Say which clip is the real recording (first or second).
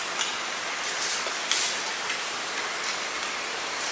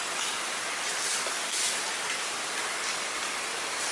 first